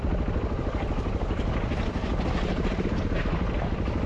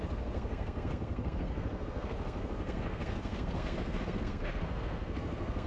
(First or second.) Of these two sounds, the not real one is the second